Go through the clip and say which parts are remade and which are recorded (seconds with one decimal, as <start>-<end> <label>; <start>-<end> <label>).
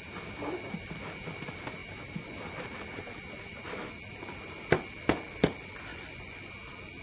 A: 0.0-5.9 recorded; 5.9-6.5 remade; 6.5-7.0 recorded